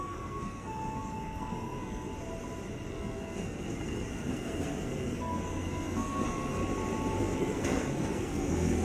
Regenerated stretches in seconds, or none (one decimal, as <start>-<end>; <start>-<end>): 0.0-2.1; 2.9-6.6; 7.2-8.8